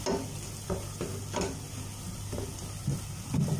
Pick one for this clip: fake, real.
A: real